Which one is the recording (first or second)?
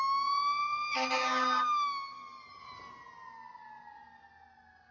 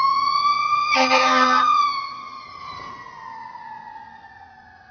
first